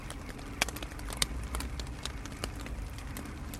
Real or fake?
real